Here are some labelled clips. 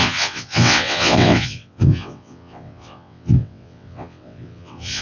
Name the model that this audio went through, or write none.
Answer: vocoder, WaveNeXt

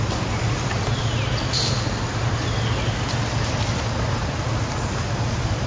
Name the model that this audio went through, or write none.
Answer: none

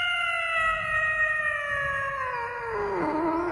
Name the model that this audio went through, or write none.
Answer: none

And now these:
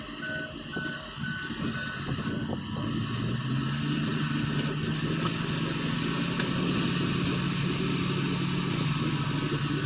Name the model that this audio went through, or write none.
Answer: none